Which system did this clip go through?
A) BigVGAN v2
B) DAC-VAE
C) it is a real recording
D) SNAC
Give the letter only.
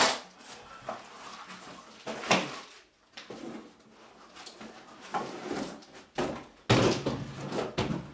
C